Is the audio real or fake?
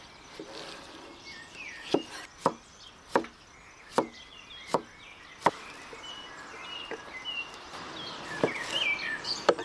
real